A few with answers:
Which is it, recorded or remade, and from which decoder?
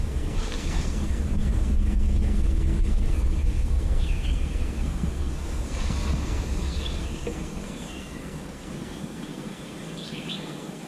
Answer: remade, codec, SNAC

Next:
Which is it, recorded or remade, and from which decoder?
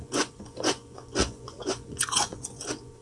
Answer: remade, vocoder, Vocos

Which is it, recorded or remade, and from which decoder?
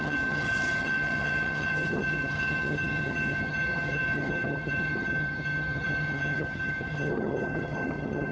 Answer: remade, vocoder, HiFi-GAN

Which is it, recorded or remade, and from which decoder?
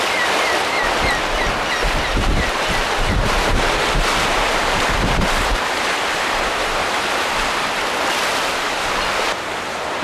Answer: recorded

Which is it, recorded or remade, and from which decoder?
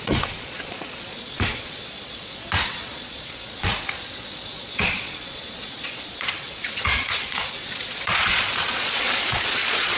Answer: remade, vocoder, Vocos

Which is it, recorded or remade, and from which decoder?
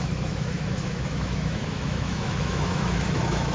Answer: remade, autoencoder, DAC-VAE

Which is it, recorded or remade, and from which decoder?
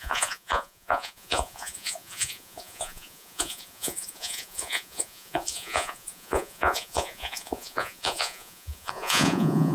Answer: remade, vocoder, Vocos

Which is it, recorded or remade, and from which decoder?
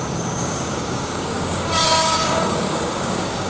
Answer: remade, codec, DAC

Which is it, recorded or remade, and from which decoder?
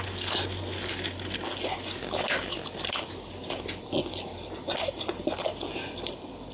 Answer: recorded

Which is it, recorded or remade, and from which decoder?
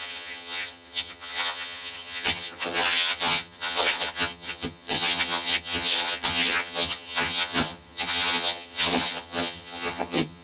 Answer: remade, vocoder, HiFi-GAN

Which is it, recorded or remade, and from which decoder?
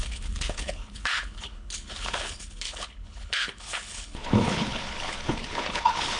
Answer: remade, codec, HILCodec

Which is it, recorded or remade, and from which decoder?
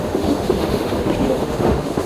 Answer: remade, autoencoder, DAC-VAE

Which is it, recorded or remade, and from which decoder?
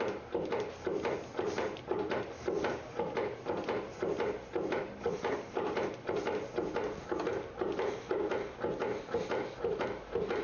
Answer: recorded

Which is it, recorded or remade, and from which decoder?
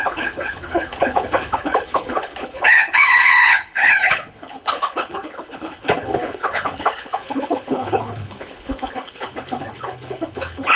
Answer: remade, codec, HILCodec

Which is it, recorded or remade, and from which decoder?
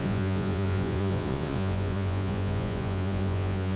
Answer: remade, vocoder, Vocos